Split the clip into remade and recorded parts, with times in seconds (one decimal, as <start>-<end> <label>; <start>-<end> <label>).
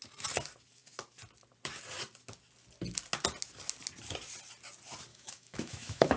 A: 0.0-5.1 recorded; 5.1-6.2 remade